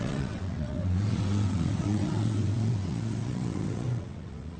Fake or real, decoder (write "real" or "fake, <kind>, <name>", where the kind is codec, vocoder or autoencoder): fake, vocoder, WaveNeXt